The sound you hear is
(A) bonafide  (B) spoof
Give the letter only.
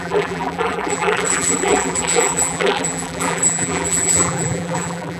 B